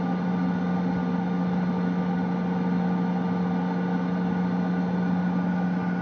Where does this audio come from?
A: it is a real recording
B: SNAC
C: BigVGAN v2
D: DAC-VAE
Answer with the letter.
A